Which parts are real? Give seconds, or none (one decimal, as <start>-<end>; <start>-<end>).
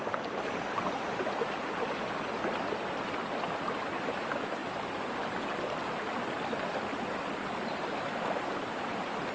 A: 0.0-9.3